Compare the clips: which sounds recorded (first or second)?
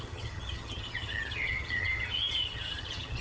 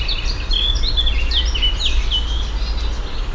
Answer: second